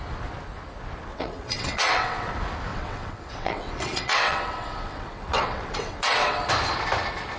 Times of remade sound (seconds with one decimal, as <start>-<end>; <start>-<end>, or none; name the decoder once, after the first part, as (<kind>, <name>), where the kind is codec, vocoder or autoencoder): 1.1-2.3 (vocoder, WaveNeXt); 2.7-6.5